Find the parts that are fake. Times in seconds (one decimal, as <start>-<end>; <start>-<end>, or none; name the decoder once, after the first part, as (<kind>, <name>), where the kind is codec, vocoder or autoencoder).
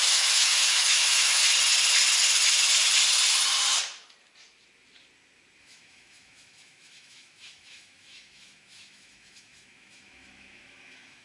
0.0-1.4 (autoencoder, DAC-VAE); 5.6-11.2